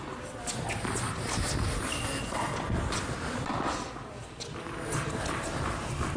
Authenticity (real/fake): real